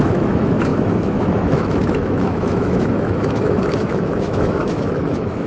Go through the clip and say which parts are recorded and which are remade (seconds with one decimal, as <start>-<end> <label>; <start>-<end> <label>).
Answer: 0.0-5.5 remade